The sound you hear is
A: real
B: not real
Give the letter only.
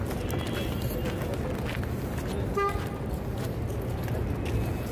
A